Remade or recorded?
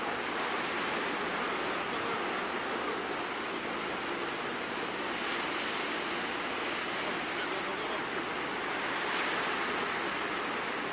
recorded